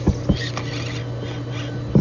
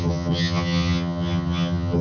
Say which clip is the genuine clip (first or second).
first